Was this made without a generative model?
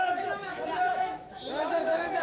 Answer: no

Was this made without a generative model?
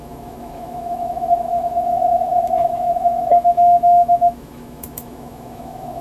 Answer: no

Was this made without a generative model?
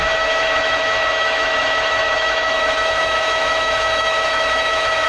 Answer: no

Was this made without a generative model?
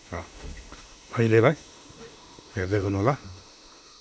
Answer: no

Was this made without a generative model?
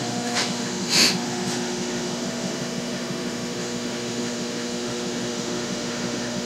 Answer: no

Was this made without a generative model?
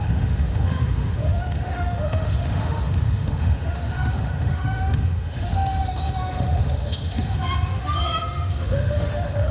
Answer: no